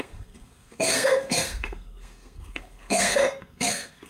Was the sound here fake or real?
fake